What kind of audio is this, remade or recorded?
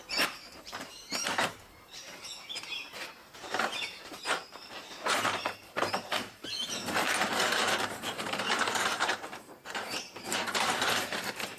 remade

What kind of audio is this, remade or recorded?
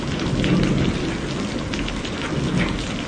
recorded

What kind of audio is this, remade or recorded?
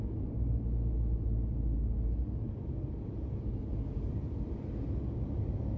recorded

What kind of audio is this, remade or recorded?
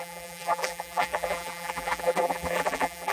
remade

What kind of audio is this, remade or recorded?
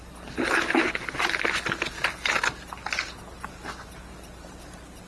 recorded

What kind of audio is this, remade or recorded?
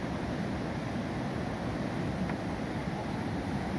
recorded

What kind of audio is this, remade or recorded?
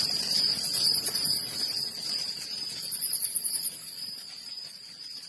remade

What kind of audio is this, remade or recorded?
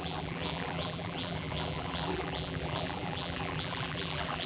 remade